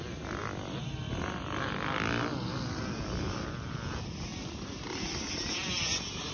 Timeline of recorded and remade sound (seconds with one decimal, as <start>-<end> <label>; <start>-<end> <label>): 0.0-6.3 recorded